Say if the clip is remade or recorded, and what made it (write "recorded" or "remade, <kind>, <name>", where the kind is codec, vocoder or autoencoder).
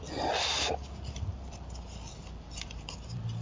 recorded